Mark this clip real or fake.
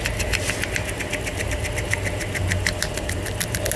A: real